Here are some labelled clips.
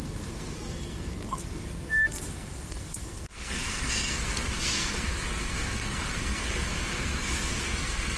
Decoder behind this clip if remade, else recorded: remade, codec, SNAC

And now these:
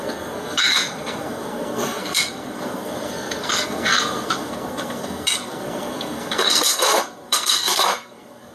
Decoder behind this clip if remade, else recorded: remade, codec, SNAC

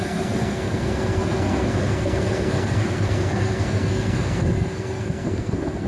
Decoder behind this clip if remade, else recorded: remade, codec, SNAC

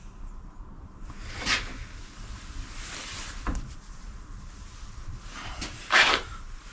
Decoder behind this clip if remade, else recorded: recorded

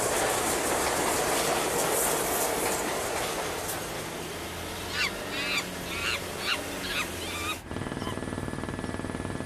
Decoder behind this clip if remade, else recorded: recorded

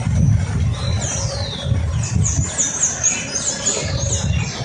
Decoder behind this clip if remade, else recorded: recorded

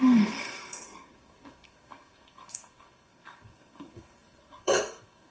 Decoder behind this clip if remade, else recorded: remade, codec, SNAC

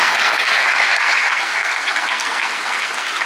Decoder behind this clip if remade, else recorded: remade, codec, SNAC